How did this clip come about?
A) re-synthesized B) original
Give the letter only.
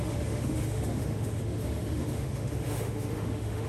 A